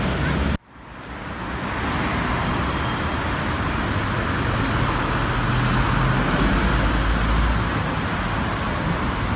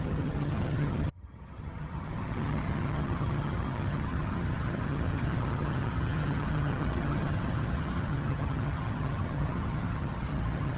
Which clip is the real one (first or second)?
first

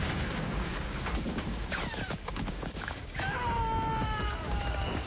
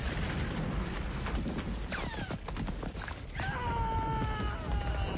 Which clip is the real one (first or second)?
second